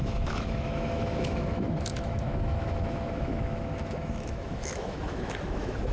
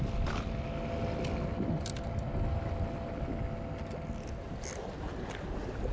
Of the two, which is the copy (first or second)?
first